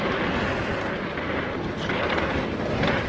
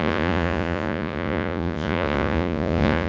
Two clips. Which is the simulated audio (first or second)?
second